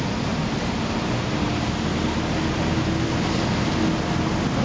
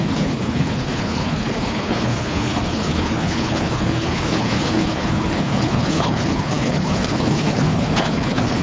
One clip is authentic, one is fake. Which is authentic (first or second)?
first